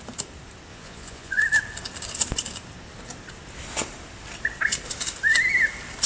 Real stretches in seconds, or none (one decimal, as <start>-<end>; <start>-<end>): 0.0-0.7; 1.4-6.1